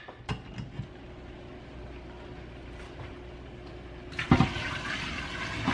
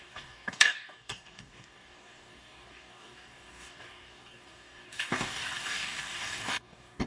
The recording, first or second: first